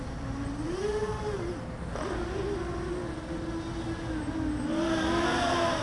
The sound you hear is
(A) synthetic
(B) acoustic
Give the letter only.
B